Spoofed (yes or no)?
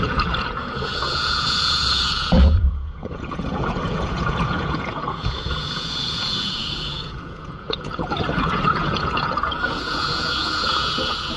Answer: yes